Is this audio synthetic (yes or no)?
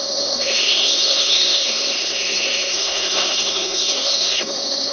yes